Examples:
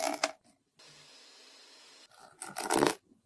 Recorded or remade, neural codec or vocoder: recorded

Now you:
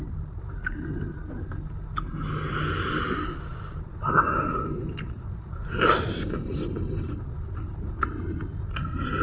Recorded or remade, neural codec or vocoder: recorded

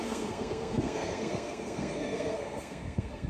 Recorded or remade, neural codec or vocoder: remade, codec, SNAC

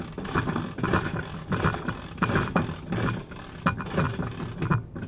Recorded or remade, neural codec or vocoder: recorded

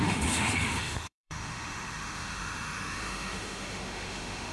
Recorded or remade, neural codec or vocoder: remade, autoencoder, DAC-VAE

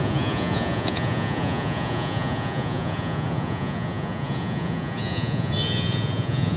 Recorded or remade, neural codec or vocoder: remade, vocoder, Vocos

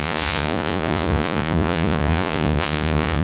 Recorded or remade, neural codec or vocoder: remade, vocoder, Vocos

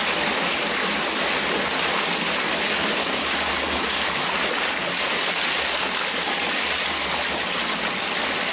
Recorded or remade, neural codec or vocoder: recorded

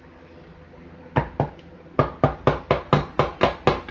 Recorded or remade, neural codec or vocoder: recorded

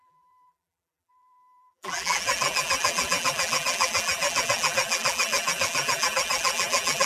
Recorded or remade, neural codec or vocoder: remade, vocoder, BigVGAN v2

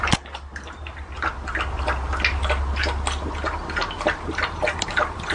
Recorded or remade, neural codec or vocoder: recorded